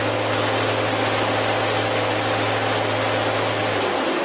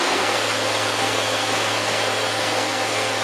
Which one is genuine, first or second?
first